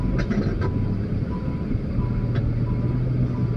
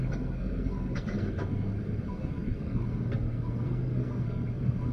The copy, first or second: second